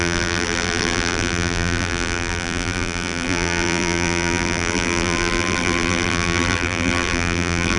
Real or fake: fake